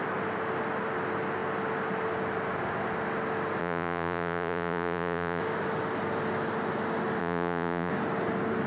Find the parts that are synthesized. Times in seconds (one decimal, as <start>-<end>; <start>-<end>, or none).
3.6-5.4; 7.2-7.9